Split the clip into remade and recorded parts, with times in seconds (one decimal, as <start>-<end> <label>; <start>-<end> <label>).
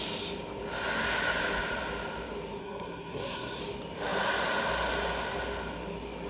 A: 0.0-2.6 recorded; 2.6-3.6 remade; 3.6-6.3 recorded